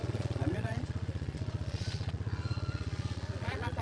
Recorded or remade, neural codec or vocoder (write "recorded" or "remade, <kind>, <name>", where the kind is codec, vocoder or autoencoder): remade, vocoder, Vocos